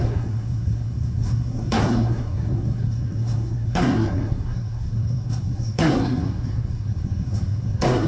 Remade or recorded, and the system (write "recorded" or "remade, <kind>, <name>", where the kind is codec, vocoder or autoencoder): remade, codec, SNAC